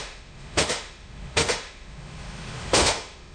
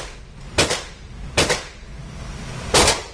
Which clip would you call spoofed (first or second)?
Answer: first